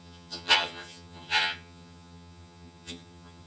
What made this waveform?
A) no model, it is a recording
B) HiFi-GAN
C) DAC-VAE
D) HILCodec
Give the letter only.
B